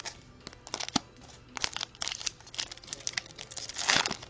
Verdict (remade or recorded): recorded